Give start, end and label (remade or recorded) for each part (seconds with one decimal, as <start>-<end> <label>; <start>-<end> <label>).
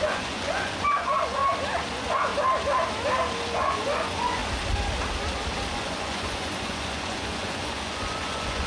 0.0-1.4 remade; 1.4-1.9 recorded; 1.9-2.3 remade; 2.3-3.4 recorded; 3.4-4.4 remade; 4.4-5.7 recorded; 5.7-8.7 remade